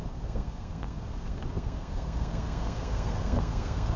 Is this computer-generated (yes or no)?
yes